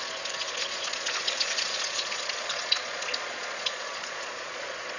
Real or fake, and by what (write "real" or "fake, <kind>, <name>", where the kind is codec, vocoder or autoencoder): fake, vocoder, Vocos